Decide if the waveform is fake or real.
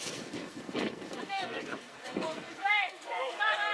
fake